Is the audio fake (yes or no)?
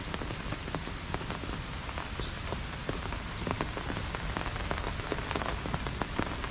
no